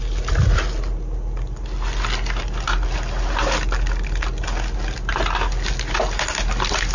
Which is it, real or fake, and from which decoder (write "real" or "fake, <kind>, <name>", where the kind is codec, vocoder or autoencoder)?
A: real